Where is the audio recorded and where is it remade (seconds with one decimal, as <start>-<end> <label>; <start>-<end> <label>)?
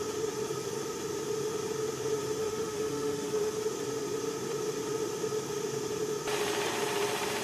0.0-2.4 recorded; 2.4-3.6 remade; 3.6-7.4 recorded